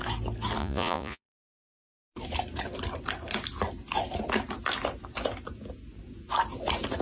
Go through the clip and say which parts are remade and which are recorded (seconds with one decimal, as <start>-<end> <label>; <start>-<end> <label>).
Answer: 0.0-0.6 recorded; 0.6-1.6 remade; 1.6-7.0 recorded